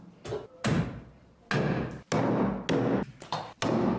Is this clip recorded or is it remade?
recorded